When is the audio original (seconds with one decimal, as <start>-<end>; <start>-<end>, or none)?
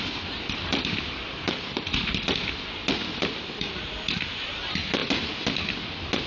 0.0-6.3